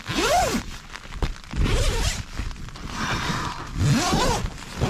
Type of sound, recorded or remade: recorded